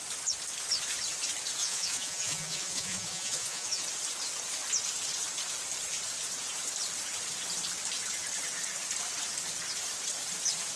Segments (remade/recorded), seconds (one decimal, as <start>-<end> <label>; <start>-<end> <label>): 0.0-1.6 recorded; 1.6-3.8 remade; 3.8-10.8 recorded